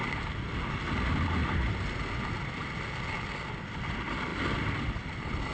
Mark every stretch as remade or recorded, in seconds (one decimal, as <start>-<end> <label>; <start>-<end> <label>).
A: 0.0-1.4 recorded; 1.4-3.3 remade; 3.3-4.3 recorded; 4.3-5.5 remade